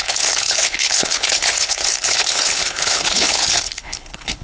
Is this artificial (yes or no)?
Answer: yes